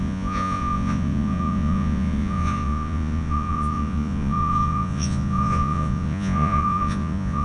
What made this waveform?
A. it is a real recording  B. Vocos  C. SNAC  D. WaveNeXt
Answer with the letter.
B